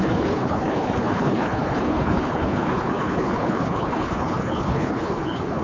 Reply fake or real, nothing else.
fake